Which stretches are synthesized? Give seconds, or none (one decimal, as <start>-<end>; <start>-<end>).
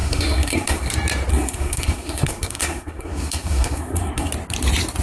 0.0-0.9; 1.3-4.3